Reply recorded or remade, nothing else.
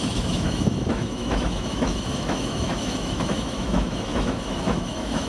remade